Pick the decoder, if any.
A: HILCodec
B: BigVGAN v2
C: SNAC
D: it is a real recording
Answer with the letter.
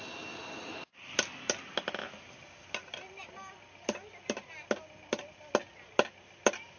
D